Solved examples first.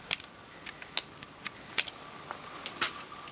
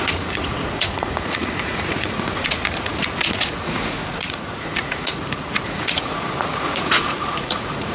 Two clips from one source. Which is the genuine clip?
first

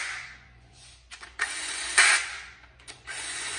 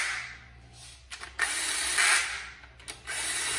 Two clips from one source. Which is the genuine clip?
second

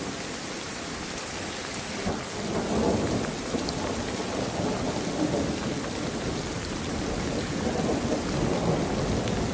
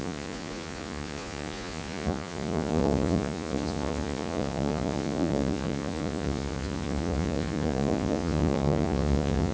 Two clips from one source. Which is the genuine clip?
first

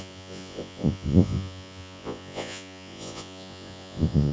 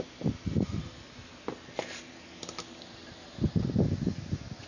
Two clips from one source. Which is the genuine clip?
second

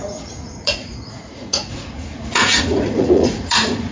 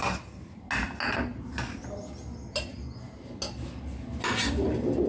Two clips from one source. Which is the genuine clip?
second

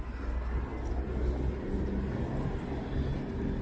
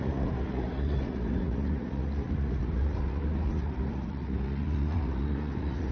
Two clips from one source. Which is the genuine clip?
first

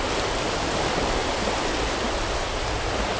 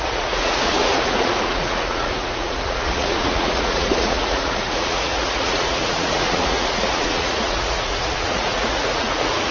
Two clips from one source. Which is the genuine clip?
first